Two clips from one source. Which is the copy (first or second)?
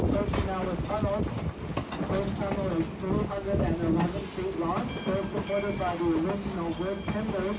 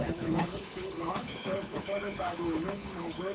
second